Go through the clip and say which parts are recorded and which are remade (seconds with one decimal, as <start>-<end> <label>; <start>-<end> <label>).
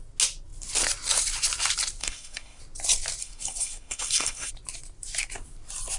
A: 0.0-2.0 recorded; 2.0-2.6 remade; 2.6-3.2 recorded; 3.2-4.5 remade; 4.5-6.0 recorded